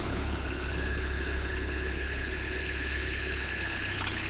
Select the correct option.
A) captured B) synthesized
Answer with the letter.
B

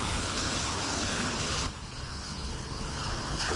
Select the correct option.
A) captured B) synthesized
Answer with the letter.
B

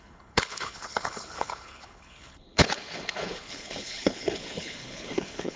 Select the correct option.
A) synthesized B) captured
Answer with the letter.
A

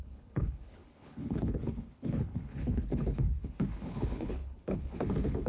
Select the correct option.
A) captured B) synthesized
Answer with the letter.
B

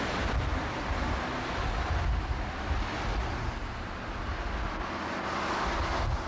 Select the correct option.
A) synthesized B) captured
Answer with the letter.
B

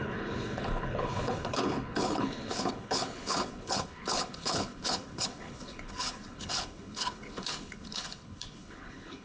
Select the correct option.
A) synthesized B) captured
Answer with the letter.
A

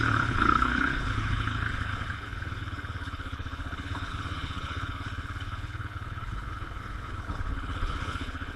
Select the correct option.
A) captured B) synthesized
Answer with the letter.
B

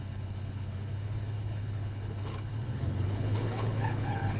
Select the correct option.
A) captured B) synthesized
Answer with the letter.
B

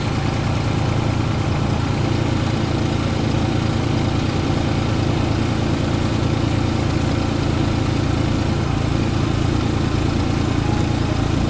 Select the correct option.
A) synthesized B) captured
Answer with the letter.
B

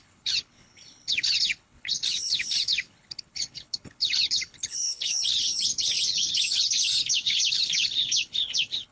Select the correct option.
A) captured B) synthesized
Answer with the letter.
B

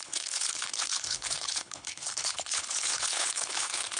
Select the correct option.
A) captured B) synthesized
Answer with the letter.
B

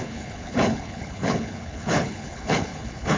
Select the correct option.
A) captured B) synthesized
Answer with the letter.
B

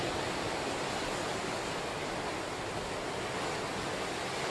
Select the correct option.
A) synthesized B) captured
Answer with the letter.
B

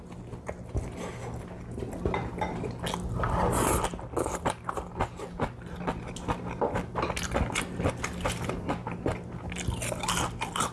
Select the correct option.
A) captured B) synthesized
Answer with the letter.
A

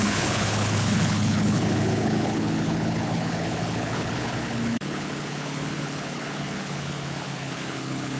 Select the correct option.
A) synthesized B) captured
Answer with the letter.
A